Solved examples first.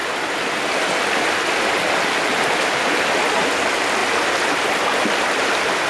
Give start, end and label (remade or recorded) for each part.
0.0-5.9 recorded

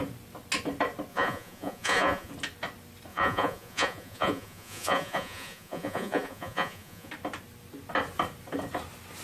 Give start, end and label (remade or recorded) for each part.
0.0-1.1 recorded; 1.1-2.3 remade; 2.3-3.1 recorded; 3.1-7.1 remade; 7.1-9.2 recorded

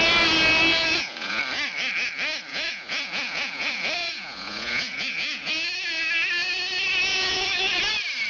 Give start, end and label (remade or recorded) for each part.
0.0-0.7 recorded; 0.7-1.4 remade; 1.4-2.5 recorded; 2.5-5.5 remade; 5.5-7.1 recorded; 7.1-7.8 remade; 7.8-8.3 recorded

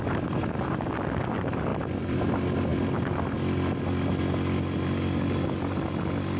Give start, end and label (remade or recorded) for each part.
0.0-1.7 recorded; 1.7-2.3 remade; 2.3-6.4 recorded

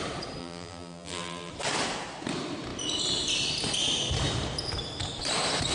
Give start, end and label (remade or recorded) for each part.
0.0-0.4 recorded; 0.4-1.5 remade; 1.5-5.7 recorded

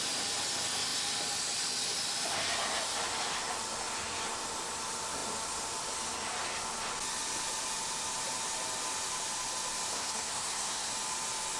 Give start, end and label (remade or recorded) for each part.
0.0-9.9 recorded; 9.9-10.9 remade; 10.9-11.6 recorded

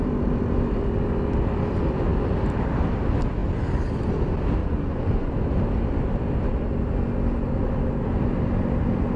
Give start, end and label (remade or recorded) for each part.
0.0-4.6 recorded; 4.6-5.3 remade; 5.3-9.2 recorded

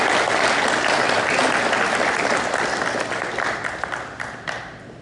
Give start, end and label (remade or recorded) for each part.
0.0-5.0 recorded